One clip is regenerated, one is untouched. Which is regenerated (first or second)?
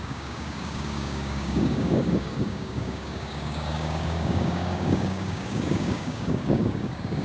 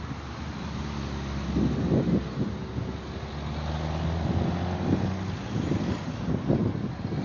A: first